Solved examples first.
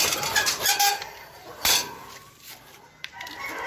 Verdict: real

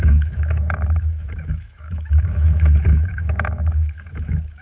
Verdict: fake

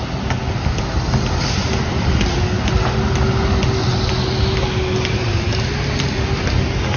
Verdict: real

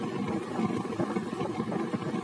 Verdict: real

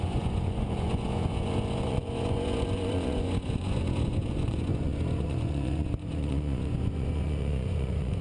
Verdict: fake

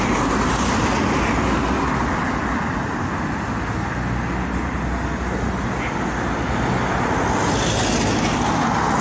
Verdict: real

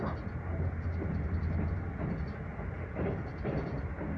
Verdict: real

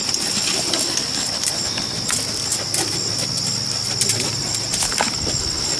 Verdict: real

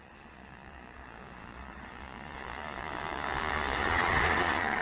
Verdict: fake